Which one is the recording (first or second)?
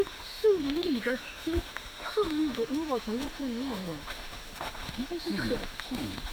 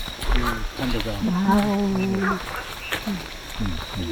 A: second